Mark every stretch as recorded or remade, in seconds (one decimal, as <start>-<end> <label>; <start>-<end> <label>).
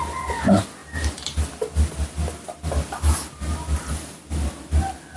0.0-5.2 recorded